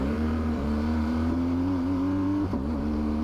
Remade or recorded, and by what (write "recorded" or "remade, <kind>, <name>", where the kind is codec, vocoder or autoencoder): remade, vocoder, BigVGAN v2